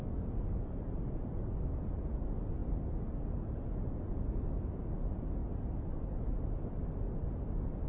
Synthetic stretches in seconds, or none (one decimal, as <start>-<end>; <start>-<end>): none